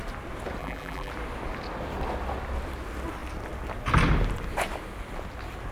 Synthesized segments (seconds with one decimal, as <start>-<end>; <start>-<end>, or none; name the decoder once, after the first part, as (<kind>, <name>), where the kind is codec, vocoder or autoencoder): 0.6-1.1 (vocoder, BigVGAN v2)